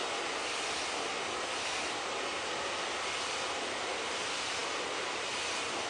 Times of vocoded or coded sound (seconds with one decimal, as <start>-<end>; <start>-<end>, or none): none